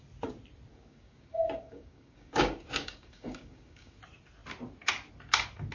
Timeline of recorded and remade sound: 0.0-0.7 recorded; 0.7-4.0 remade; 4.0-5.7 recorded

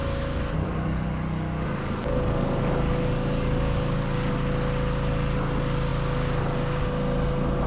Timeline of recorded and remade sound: 0.0-0.6 recorded; 0.6-4.3 remade; 4.3-7.7 recorded

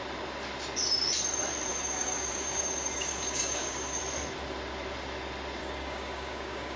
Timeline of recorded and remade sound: 0.0-1.7 recorded; 1.7-4.0 remade; 4.0-5.6 recorded; 5.6-6.8 remade